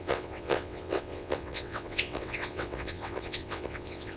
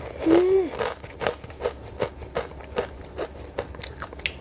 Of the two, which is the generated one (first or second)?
first